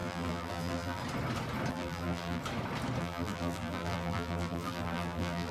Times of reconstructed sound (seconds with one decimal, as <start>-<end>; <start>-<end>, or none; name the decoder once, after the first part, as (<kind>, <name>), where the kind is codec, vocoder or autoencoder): 0.0-1.0 (vocoder, BigVGAN v2); 1.7-2.4; 3.0-5.5